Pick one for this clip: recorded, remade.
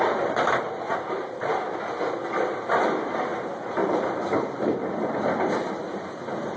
recorded